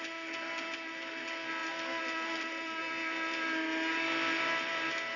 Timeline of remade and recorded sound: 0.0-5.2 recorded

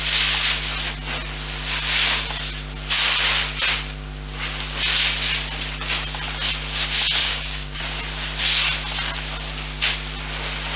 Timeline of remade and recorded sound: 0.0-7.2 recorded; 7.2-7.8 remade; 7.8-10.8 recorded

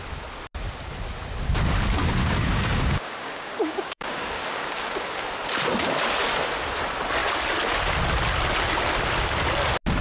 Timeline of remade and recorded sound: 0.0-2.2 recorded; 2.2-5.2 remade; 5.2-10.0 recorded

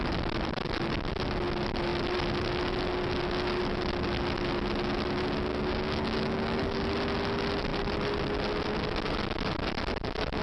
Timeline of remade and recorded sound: 0.0-5.5 recorded; 5.5-6.9 remade; 6.9-10.4 recorded